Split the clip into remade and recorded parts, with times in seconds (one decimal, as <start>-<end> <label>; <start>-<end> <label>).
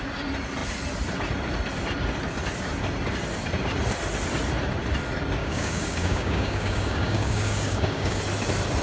0.0-5.4 recorded; 5.4-8.2 remade; 8.2-8.8 recorded